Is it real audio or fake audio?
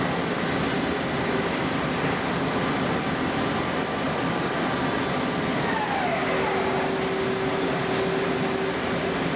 real